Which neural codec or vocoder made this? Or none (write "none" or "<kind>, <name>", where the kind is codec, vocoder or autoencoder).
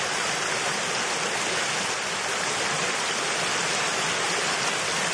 none